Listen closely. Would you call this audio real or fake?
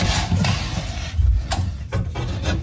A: real